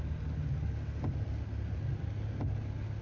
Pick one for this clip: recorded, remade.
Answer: recorded